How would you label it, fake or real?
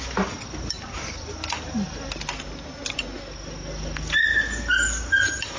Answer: real